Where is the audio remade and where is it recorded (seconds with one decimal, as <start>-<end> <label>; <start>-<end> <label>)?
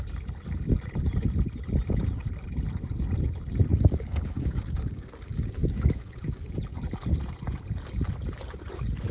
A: 0.0-3.7 recorded; 3.7-6.5 remade; 6.5-9.1 recorded